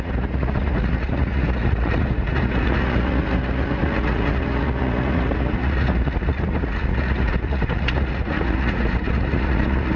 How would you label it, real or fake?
fake